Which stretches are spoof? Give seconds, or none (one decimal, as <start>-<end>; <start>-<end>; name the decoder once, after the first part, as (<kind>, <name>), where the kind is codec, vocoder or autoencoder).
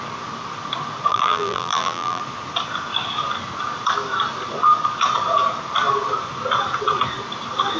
1.1-2.2 (vocoder, BigVGAN v2)